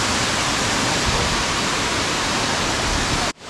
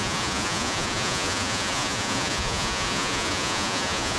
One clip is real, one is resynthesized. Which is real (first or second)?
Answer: first